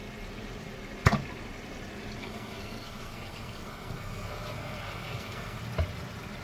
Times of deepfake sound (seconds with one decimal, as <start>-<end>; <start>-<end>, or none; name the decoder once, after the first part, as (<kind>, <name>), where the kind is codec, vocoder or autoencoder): 2.2-5.6 (codec, SNAC)